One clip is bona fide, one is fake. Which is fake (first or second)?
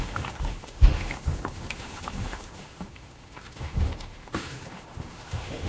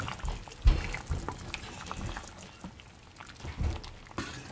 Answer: first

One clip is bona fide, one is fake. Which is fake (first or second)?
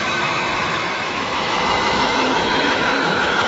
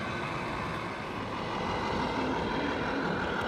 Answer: first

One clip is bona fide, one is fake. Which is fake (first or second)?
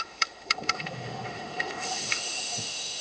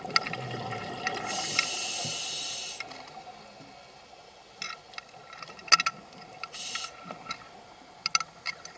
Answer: first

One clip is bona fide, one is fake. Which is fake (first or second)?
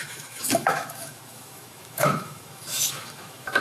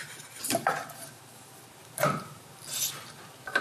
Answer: first